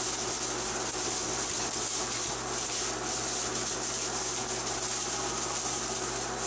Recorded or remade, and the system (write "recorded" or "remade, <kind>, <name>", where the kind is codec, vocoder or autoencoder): recorded